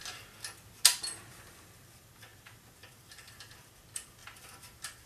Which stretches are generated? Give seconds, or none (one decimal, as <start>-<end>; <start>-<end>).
1.3-5.1